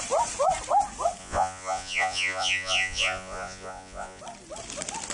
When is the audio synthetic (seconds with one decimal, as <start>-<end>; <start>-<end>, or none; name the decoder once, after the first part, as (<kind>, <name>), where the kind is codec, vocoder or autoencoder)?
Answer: 1.2-4.2 (vocoder, Vocos)